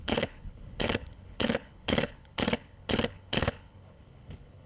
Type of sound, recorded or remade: remade